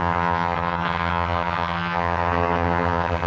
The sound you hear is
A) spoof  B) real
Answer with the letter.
A